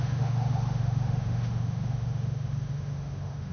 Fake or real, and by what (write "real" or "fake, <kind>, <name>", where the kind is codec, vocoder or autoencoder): fake, autoencoder, DAC-VAE